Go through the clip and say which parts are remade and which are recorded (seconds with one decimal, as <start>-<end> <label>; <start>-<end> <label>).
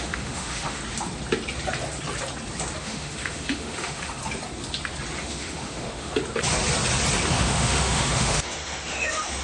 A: 0.0-0.8 remade; 0.8-2.8 recorded; 2.8-4.2 remade; 4.2-5.2 recorded; 5.2-6.2 remade; 6.2-7.3 recorded; 7.3-9.4 remade